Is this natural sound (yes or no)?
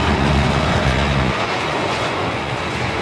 no